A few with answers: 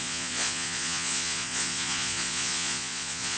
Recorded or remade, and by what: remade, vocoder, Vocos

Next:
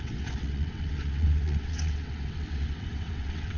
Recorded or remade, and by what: remade, vocoder, WaveNeXt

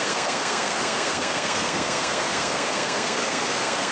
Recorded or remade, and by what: remade, codec, SNAC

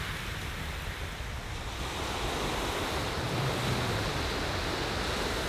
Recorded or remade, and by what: recorded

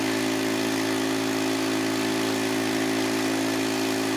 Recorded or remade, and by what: recorded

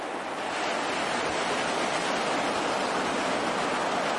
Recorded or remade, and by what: recorded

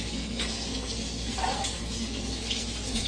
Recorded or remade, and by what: remade, codec, SNAC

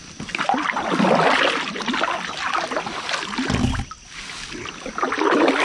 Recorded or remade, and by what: recorded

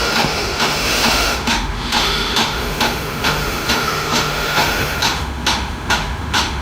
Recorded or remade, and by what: remade, autoencoder, DAC-VAE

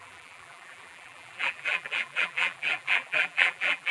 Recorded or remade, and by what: remade, vocoder, BigVGAN v2